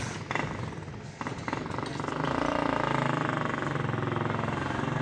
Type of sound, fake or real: real